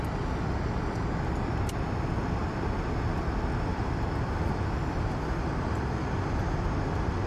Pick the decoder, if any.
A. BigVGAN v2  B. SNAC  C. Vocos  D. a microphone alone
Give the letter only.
D